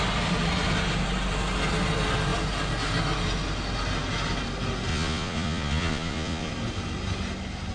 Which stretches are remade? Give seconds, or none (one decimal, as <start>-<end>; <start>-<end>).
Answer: 4.9-6.5